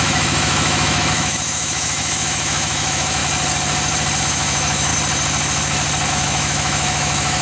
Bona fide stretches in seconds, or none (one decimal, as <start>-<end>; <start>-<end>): 3.2-4.2; 4.9-6.1